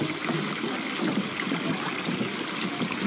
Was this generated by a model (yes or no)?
no